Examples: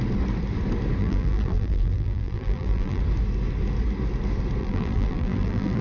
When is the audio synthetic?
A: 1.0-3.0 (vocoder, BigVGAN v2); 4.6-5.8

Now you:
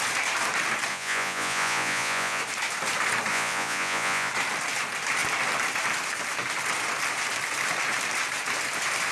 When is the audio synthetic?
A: 0.9-2.4 (vocoder, Vocos); 3.3-4.3

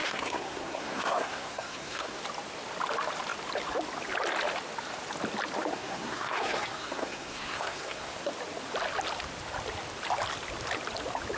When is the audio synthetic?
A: 0.0-2.2 (codec, SNAC); 5.7-8.3

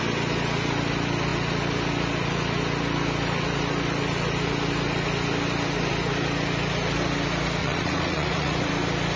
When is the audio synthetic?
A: 7.6-8.7 (vocoder, Vocos)

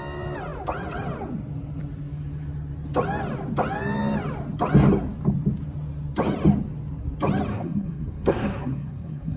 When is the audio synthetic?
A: 7.5-9.4 (codec, SNAC)

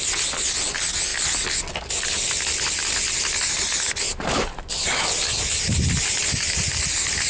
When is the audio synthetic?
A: none